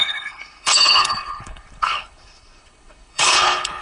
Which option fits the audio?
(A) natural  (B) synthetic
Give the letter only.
B